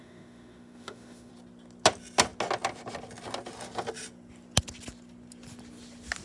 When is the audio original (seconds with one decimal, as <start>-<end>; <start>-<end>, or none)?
1.3-6.2